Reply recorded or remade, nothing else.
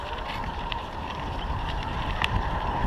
remade